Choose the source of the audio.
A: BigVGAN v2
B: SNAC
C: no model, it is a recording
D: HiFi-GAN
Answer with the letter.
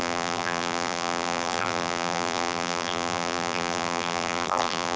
A